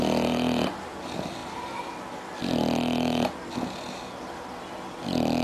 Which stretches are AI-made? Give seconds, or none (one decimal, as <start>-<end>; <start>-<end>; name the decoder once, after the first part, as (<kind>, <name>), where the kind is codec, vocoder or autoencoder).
none